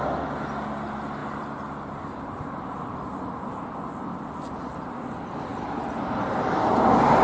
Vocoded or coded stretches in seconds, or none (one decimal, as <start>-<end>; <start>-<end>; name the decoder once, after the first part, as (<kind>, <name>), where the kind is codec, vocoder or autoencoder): none